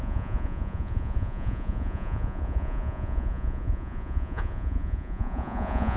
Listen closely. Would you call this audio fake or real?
fake